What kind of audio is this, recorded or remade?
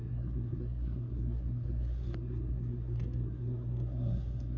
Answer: remade